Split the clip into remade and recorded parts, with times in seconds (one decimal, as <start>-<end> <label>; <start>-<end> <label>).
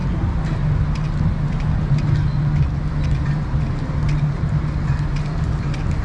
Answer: 0.0-6.0 recorded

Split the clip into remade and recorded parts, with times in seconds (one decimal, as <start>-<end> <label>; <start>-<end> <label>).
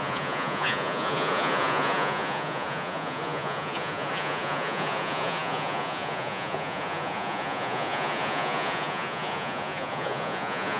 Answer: 0.0-10.8 remade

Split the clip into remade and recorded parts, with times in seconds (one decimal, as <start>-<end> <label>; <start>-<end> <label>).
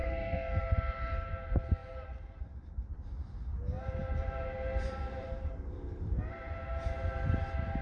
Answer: 0.0-0.6 remade; 0.6-7.8 recorded